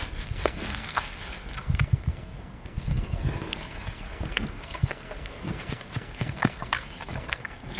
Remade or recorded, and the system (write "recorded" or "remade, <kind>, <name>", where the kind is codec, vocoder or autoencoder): remade, codec, SNAC